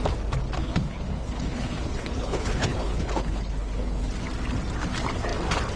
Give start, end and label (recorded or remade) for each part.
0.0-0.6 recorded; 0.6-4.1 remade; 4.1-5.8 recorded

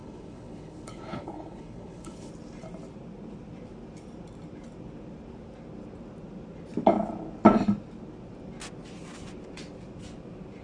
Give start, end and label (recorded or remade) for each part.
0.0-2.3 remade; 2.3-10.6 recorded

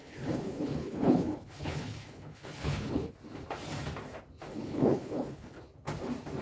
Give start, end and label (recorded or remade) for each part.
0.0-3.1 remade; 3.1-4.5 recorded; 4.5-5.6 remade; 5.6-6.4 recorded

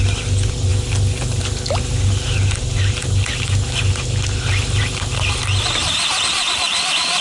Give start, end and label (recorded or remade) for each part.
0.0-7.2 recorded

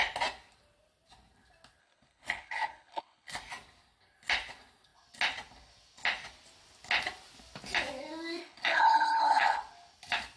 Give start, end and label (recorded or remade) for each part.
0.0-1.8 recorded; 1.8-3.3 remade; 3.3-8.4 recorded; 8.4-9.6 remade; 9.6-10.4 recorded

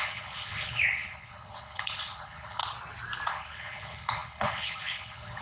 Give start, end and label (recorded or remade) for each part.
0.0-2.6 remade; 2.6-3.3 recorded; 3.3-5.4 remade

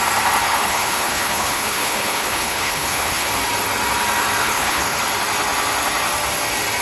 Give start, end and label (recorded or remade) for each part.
0.0-0.4 recorded; 0.4-3.3 remade; 3.3-4.4 recorded; 4.4-5.0 remade; 5.0-6.8 recorded

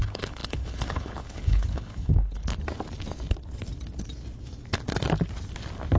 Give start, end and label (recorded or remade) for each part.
0.0-2.4 remade; 2.4-6.0 recorded